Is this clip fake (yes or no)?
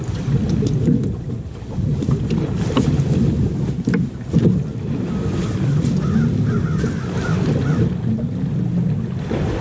no